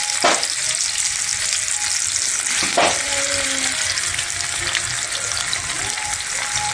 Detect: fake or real real